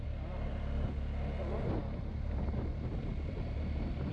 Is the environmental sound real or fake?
real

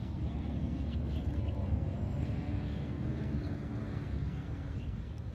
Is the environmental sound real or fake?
fake